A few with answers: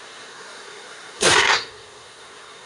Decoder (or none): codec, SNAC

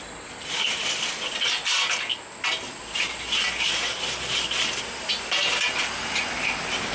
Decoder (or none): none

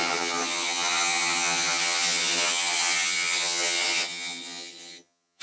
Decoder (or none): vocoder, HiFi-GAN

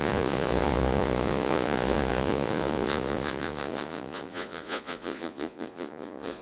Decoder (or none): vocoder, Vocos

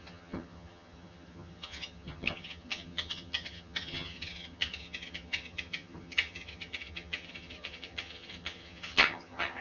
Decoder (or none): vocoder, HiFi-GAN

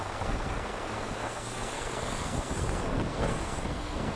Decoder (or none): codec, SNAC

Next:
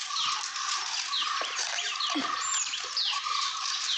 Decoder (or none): none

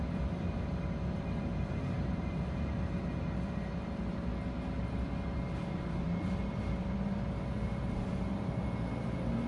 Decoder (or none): none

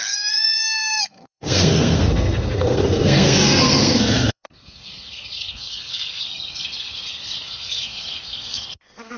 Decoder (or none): codec, SNAC